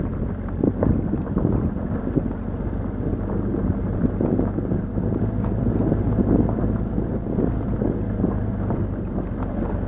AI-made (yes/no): no